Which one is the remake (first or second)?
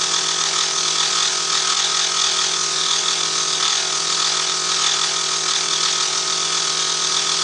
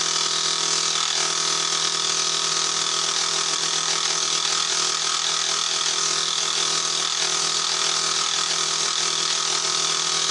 first